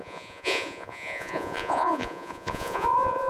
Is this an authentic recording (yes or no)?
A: no